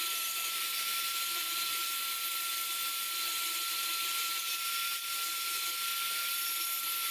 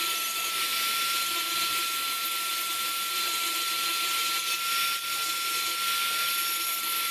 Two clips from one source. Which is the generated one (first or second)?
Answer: first